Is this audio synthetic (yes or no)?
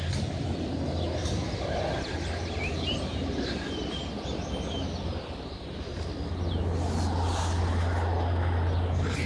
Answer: no